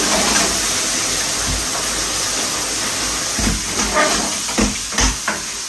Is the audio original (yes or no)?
yes